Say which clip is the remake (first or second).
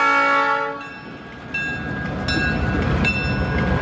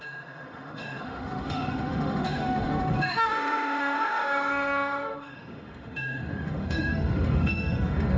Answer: second